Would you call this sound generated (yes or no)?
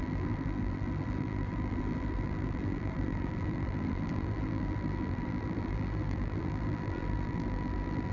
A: yes